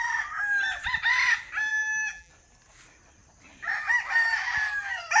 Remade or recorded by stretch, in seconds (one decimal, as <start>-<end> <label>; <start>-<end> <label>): 0.0-1.7 recorded; 1.7-2.3 remade; 2.3-5.2 recorded